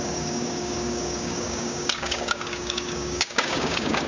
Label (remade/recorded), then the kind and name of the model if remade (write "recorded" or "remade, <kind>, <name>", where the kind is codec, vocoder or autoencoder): remade, codec, DAC